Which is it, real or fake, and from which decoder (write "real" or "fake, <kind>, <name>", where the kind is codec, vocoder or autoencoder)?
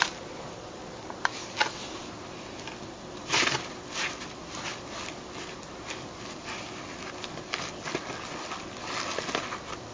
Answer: real